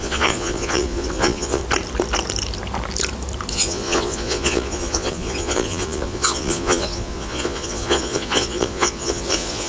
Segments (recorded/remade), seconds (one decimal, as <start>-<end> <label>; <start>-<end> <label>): 0.0-1.6 remade; 1.6-3.5 recorded; 3.5-9.7 remade